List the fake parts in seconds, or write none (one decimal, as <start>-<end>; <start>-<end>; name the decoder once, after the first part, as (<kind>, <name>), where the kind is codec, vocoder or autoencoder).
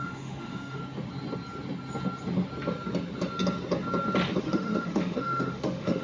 0.0-0.8 (autoencoder, DAC-VAE); 4.4-6.0